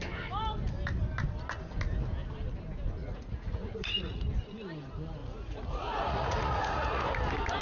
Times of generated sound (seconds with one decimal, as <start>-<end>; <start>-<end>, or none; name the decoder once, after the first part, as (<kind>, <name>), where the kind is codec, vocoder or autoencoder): 3.0-4.2 (vocoder, Vocos); 5.2-7.0